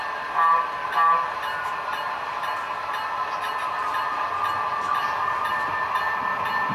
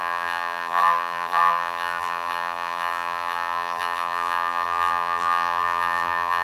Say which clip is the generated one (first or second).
second